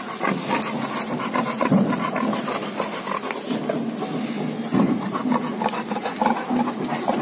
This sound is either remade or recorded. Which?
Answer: recorded